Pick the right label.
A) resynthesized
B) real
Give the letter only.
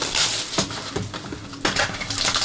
B